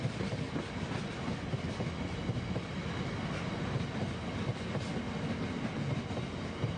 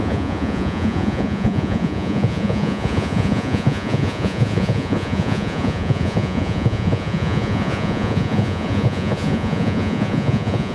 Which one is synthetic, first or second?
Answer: second